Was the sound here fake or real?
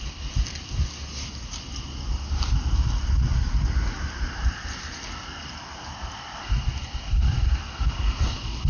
real